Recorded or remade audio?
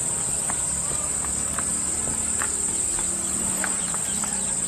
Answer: recorded